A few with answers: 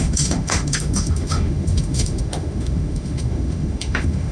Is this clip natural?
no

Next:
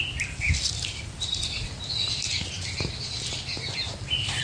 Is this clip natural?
yes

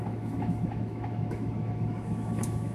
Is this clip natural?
no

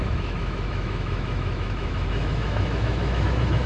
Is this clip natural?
no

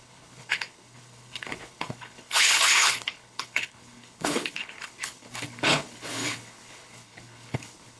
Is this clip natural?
no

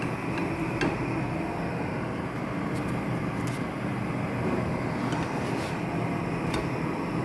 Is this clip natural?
yes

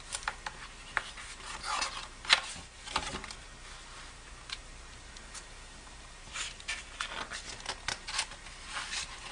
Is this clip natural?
yes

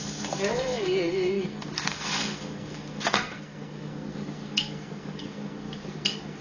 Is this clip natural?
no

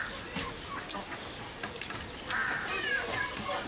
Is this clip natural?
yes